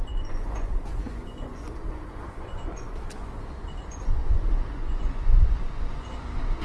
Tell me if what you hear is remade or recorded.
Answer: remade